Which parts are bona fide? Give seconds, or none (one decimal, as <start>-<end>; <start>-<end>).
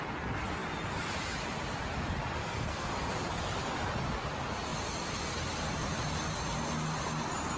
0.0-2.4; 2.9-7.6